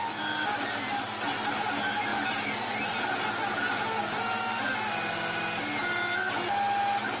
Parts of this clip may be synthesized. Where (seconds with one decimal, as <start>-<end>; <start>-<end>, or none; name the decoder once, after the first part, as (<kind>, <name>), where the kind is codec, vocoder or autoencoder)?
none